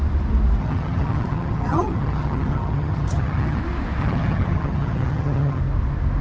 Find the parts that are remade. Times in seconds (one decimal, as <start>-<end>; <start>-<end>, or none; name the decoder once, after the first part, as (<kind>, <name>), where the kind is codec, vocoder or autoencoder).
0.6-3.6 (vocoder, HiFi-GAN); 4.0-5.6

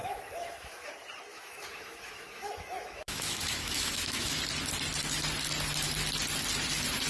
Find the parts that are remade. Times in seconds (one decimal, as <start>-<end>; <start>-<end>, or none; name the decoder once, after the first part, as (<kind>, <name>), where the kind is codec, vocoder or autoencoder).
0.0-0.9 (autoencoder, DAC-VAE); 1.3-4.4

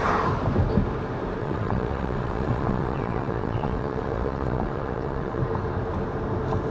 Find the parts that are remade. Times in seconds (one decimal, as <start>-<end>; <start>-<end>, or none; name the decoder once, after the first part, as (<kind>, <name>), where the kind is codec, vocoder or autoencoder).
1.4-5.4 (vocoder, WaveNeXt)

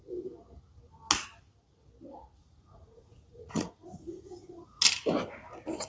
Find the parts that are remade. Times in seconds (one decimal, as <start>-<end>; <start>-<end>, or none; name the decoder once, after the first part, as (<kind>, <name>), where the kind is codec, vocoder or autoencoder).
2.4-4.8 (vocoder, Vocos)

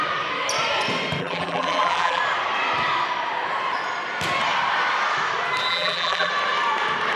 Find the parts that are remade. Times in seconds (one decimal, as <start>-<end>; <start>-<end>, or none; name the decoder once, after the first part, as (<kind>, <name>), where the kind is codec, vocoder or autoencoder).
1.2-2.2 (vocoder, BigVGAN v2); 5.7-6.3